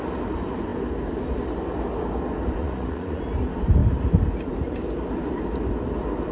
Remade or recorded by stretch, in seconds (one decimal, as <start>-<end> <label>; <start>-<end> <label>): 0.0-2.6 recorded; 2.6-3.2 remade; 3.2-6.3 recorded